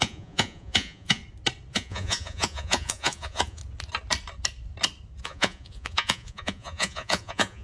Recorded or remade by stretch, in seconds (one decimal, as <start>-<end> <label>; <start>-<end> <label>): 0.0-1.2 remade; 1.2-1.7 recorded; 1.7-3.6 remade; 3.6-5.2 recorded; 5.2-7.6 remade